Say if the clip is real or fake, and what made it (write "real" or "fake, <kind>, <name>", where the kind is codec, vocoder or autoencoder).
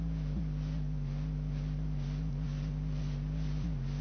real